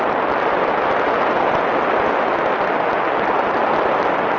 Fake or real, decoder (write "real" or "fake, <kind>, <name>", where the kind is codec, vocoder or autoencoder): real